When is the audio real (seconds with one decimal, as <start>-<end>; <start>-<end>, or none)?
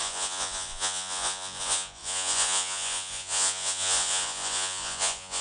none